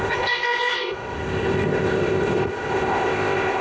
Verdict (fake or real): fake